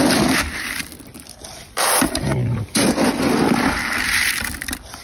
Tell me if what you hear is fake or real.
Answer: fake